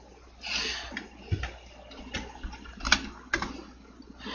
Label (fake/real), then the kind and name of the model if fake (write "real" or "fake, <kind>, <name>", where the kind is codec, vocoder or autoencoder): real